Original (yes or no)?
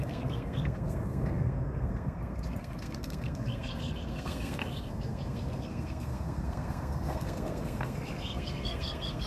no